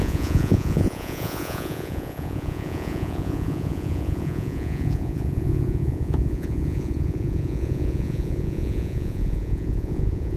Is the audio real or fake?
fake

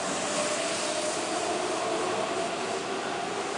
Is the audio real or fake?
real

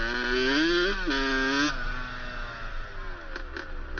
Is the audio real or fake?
real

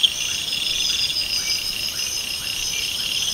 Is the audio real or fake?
real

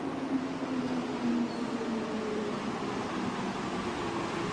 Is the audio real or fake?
real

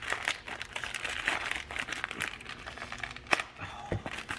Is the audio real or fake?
real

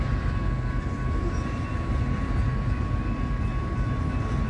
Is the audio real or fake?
real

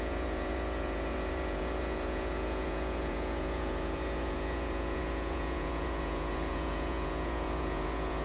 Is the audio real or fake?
fake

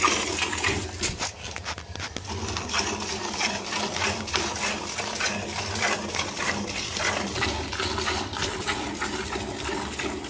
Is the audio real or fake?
real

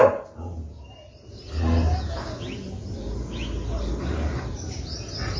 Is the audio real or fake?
real